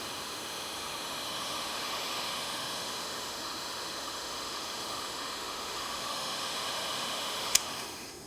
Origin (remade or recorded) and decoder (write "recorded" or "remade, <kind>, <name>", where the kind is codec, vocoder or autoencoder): remade, autoencoder, DAC-VAE